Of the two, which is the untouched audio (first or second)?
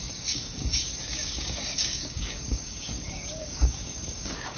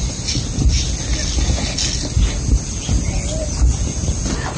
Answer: second